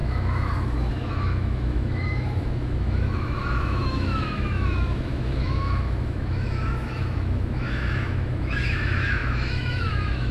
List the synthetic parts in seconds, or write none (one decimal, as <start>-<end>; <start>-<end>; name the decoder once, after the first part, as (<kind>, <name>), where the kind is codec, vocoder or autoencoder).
0.0-10.3 (autoencoder, DAC-VAE)